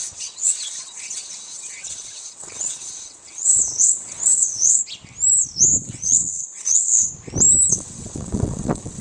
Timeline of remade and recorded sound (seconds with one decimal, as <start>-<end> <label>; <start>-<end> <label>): 0.0-4.8 remade; 4.8-5.8 recorded; 5.8-7.1 remade; 7.1-7.7 recorded; 7.7-9.0 remade